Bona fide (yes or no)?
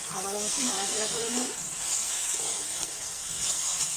no